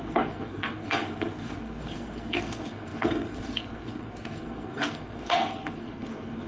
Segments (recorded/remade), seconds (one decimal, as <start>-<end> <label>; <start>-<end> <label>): 0.0-6.5 remade